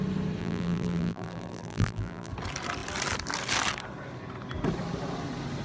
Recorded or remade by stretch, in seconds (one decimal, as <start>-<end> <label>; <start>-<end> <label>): 0.0-0.4 recorded; 0.4-2.3 remade; 2.3-5.6 recorded